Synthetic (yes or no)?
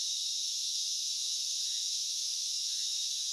yes